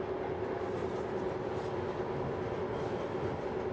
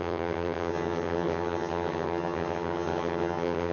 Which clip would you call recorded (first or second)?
first